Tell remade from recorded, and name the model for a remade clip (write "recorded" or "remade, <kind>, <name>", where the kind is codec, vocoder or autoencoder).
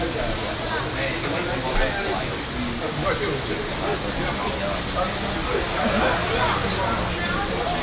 recorded